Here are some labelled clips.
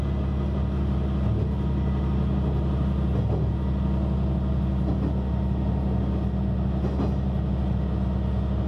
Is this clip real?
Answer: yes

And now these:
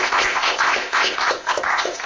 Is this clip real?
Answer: no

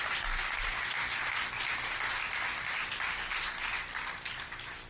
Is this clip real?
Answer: yes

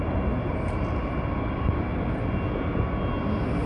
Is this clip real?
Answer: yes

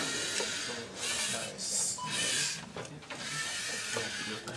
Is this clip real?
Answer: yes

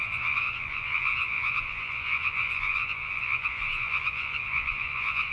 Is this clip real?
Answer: no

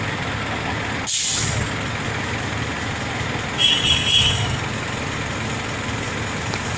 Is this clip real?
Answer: yes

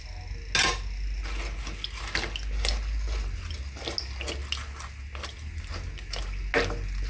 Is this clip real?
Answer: yes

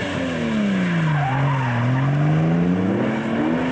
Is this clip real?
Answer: yes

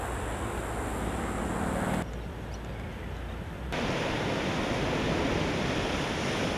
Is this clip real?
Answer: yes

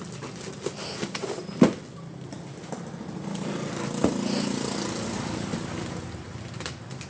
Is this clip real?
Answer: yes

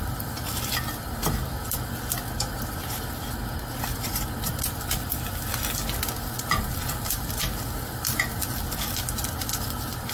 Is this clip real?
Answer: yes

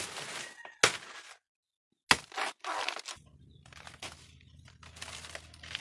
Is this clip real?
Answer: yes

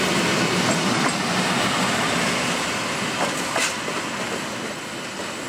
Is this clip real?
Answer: yes